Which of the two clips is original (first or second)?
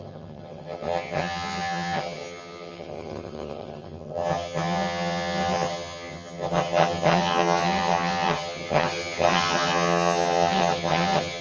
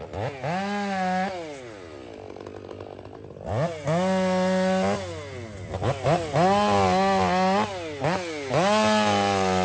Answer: second